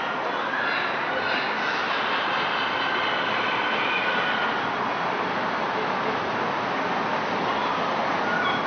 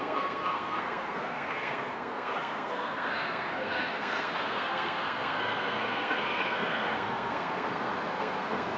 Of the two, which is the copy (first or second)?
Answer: second